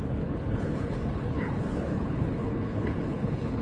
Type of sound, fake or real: fake